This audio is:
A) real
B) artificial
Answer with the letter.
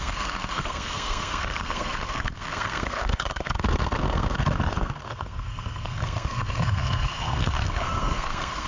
B